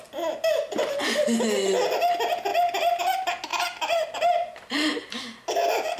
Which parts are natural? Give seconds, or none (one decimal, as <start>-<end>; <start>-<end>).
0.0-3.5; 5.2-6.0